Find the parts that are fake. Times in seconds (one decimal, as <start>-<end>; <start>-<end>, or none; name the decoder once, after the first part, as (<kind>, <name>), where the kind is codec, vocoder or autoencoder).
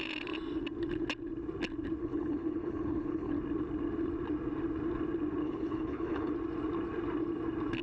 2.0-3.3 (codec, HILCodec); 5.4-6.3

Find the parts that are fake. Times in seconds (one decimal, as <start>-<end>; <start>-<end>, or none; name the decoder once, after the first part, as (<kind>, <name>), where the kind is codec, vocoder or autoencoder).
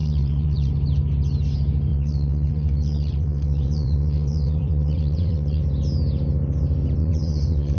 0.0-0.7 (vocoder, WaveNeXt); 1.9-5.6; 7.0-7.8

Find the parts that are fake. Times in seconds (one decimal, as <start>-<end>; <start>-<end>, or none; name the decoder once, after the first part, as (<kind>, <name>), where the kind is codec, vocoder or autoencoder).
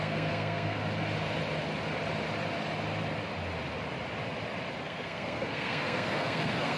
0.0-0.8 (codec, SNAC); 4.8-6.8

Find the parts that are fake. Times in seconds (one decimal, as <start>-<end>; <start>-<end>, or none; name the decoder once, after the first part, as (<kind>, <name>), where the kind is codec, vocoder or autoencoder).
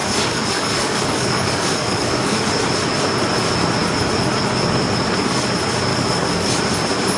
0.0-2.4 (codec, DAC); 5.9-6.5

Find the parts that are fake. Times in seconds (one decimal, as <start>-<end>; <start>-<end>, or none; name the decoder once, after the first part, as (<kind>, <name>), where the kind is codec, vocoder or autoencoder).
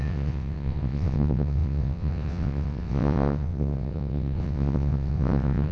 0.0-5.7 (vocoder, WaveNeXt)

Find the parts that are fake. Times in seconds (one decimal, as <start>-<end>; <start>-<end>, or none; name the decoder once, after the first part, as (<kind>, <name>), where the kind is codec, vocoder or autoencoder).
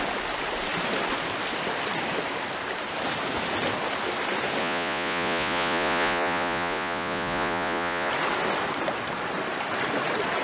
4.6-8.1 (vocoder, Vocos)